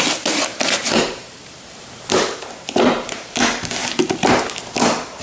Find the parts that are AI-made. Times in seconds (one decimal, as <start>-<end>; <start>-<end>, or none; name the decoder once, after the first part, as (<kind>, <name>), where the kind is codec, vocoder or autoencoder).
0.5-3.4 (vocoder, BigVGAN v2); 3.8-4.7